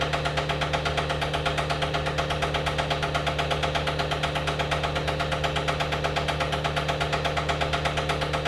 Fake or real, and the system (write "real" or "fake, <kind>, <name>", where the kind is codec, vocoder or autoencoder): real